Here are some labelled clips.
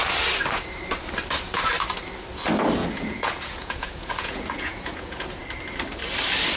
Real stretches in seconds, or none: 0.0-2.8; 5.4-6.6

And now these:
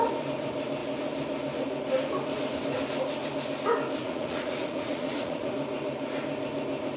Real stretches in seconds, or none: 0.0-4.0; 5.5-7.0

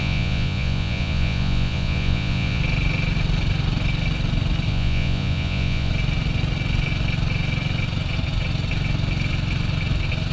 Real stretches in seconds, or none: 2.6-4.7; 5.9-10.3

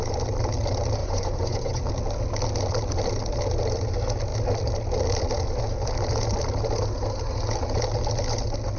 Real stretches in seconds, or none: 0.0-1.0; 1.8-8.8